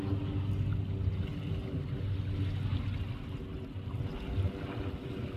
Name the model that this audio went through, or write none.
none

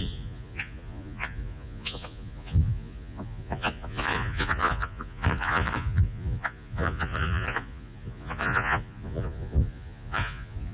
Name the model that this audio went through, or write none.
vocoder, Vocos